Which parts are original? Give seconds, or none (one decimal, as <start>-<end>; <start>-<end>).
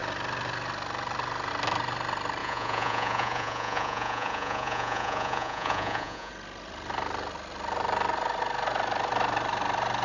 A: 0.0-2.4; 6.3-10.0